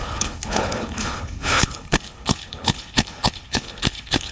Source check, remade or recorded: remade